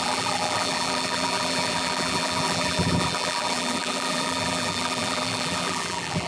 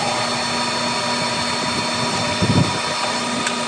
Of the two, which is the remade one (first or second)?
first